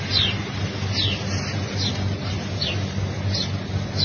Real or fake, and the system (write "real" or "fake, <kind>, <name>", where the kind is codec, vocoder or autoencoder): real